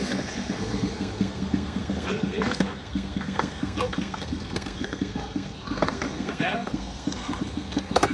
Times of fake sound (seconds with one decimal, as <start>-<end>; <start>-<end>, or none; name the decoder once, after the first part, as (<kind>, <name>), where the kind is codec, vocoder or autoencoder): 0.0-8.1 (codec, SNAC)